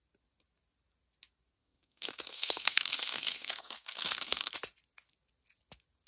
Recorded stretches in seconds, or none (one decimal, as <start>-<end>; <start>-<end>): 0.0-1.6; 4.5-6.1